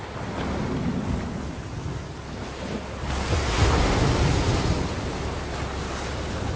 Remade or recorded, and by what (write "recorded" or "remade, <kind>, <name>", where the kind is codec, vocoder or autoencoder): recorded